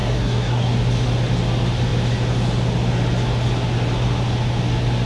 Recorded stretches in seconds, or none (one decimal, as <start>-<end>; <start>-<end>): 0.7-5.1